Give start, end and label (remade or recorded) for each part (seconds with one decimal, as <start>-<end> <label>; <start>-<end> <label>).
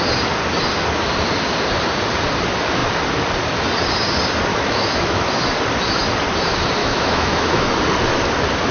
0.0-4.5 recorded; 4.5-5.3 remade; 5.3-6.8 recorded; 6.8-7.7 remade; 7.7-8.7 recorded